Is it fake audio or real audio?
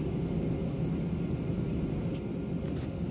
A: real